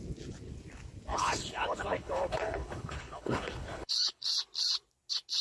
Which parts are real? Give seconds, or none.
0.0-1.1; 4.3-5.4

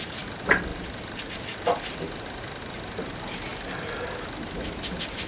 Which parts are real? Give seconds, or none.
0.0-5.3

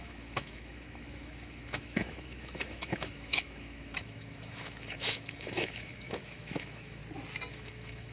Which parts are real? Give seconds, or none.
7.0-7.5

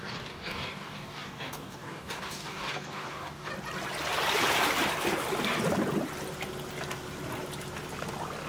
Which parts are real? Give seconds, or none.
3.5-8.5

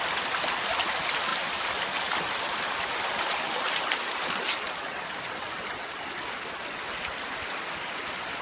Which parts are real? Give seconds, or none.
0.0-8.4

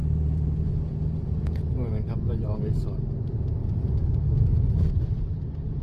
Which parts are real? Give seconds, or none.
2.6-3.6; 4.9-5.8

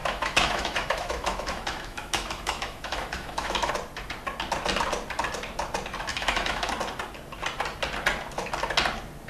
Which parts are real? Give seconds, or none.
3.7-6.1; 6.7-9.3

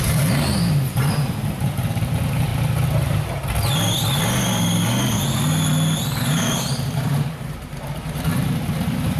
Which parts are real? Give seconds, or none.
2.5-3.0; 3.4-6.0